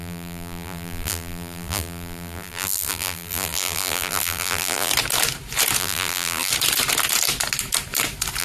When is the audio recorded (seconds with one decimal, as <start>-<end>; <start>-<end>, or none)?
4.9-5.8; 6.5-8.4